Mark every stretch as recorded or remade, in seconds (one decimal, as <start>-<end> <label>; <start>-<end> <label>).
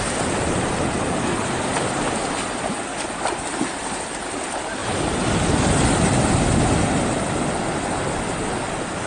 0.0-9.1 recorded